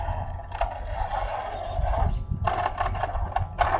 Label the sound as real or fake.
real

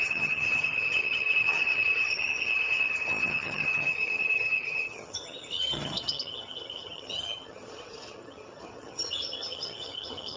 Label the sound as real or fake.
fake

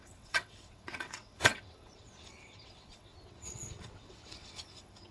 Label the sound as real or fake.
fake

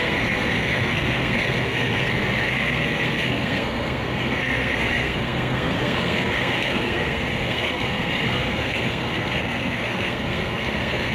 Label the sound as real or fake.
fake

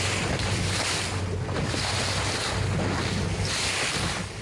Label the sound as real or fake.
real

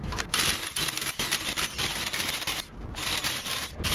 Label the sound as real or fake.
real